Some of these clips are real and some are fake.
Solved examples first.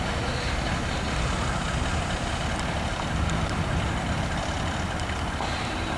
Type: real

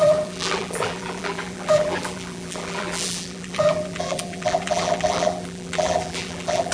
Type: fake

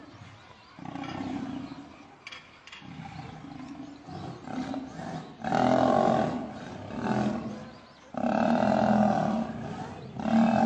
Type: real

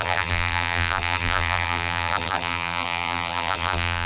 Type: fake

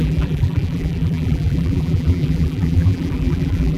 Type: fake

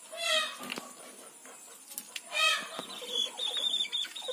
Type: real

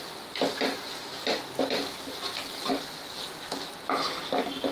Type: real